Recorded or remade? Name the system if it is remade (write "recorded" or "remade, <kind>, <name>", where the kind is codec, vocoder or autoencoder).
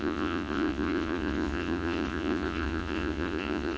remade, vocoder, Vocos